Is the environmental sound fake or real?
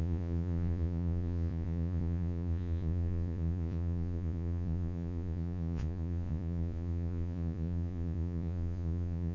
fake